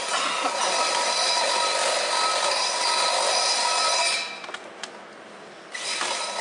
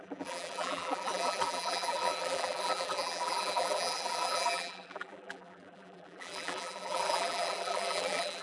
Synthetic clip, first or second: second